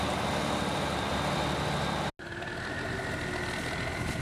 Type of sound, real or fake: real